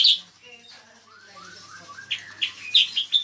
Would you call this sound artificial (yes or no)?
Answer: no